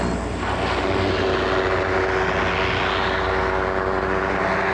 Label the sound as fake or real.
real